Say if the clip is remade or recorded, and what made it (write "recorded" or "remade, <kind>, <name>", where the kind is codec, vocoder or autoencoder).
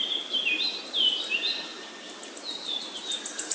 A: recorded